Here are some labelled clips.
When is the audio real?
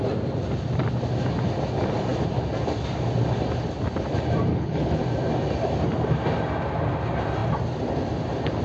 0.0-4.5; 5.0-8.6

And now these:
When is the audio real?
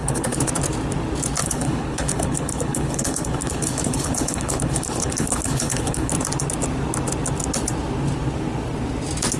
0.5-1.4; 6.1-9.4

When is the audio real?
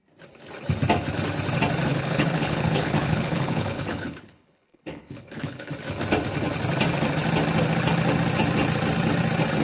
0.0-1.9; 5.7-9.6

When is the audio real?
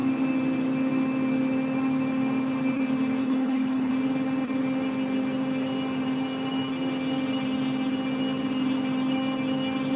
0.0-3.2; 3.9-10.0